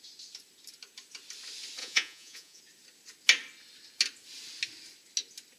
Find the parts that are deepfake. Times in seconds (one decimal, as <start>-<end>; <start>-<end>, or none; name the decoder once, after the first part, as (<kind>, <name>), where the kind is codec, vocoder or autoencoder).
1.8-2.6 (vocoder, Vocos)